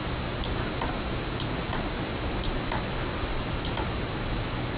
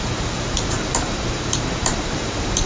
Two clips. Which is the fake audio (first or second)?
second